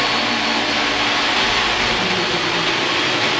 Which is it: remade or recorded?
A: recorded